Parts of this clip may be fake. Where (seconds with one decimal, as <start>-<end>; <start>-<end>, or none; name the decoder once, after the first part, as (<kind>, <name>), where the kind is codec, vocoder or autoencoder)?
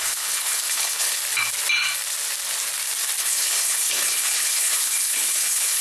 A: 0.0-1.2 (codec, HILCodec); 3.2-5.8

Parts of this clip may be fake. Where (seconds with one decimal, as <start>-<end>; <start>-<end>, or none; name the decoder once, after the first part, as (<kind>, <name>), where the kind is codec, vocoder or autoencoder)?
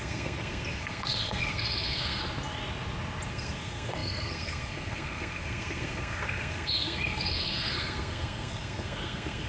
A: 0.0-2.2 (codec, SNAC); 3.3-9.5